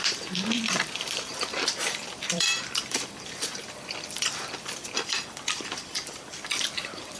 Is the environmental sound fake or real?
fake